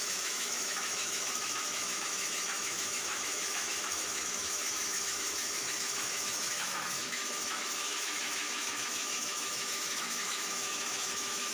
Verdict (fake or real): fake